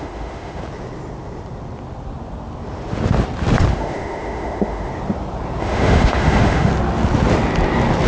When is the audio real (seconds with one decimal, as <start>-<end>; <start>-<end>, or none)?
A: 0.6-3.7; 4.9-5.6; 6.7-8.1